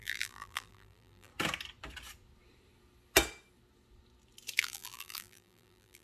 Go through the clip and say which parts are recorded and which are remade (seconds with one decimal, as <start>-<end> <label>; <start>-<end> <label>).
0.0-1.3 remade; 1.3-4.6 recorded; 4.6-6.0 remade